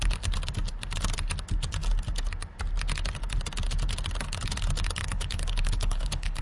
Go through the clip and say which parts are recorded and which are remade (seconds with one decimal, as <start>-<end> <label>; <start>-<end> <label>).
0.0-5.0 recorded; 5.0-6.4 remade